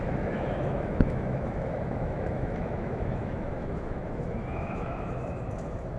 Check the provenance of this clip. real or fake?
fake